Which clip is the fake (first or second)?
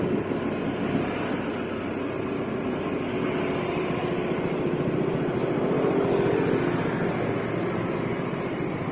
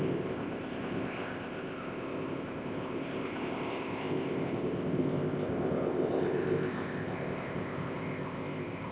second